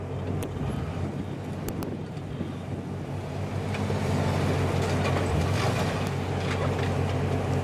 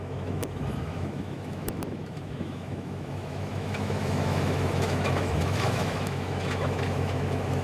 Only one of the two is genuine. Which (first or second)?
first